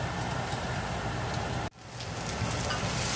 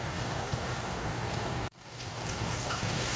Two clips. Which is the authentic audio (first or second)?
first